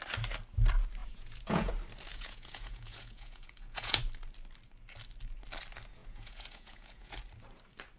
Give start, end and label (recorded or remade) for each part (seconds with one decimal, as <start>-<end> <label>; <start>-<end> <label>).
0.0-1.0 recorded; 1.0-1.7 remade; 1.7-2.1 recorded; 2.1-4.0 remade; 4.0-6.0 recorded; 6.0-7.2 remade; 7.2-8.0 recorded